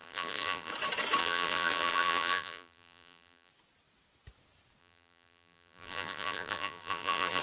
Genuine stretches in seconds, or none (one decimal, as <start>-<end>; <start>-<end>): 0.7-1.2; 3.5-4.8